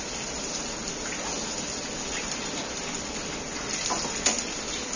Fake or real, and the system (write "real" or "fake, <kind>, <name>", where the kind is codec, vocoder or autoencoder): real